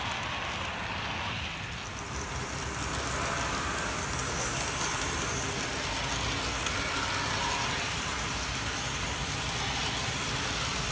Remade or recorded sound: recorded